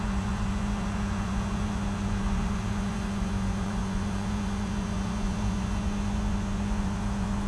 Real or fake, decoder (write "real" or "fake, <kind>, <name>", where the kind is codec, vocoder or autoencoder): fake, vocoder, Vocos